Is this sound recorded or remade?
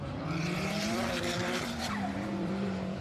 remade